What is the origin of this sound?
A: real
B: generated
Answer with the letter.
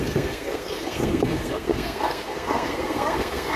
B